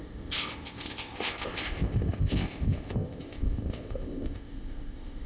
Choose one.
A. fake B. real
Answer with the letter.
A